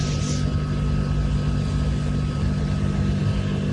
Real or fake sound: real